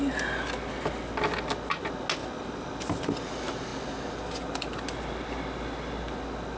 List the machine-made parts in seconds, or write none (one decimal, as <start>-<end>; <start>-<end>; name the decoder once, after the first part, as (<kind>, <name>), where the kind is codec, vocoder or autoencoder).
2.2-3.3 (vocoder, BigVGAN v2)